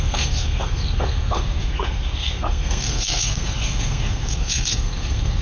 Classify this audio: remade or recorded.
remade